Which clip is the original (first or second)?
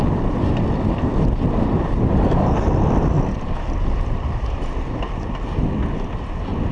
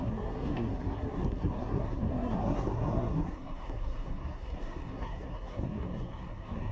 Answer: first